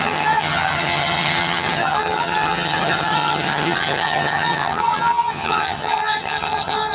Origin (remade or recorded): remade